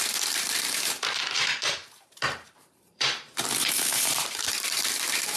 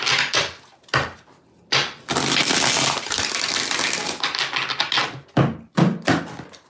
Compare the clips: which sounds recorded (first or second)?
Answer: second